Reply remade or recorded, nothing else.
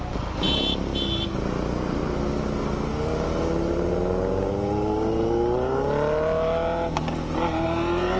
recorded